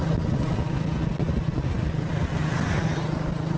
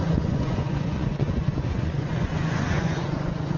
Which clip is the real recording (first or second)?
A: first